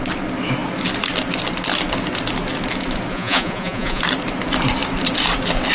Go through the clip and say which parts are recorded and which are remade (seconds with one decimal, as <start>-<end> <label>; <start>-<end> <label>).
0.0-3.1 recorded; 3.1-4.0 remade; 4.0-5.7 recorded